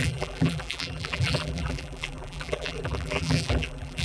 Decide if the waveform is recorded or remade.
remade